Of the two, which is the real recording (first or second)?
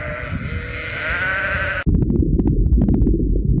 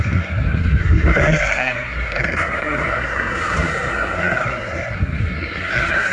first